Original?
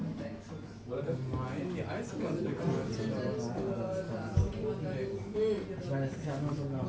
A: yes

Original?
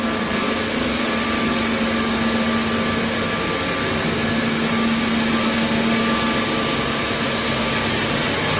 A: yes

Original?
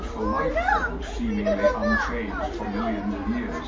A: yes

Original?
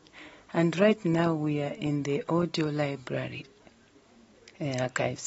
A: yes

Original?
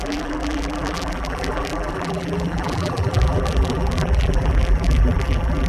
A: no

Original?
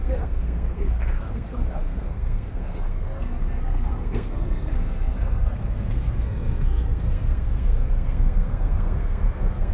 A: no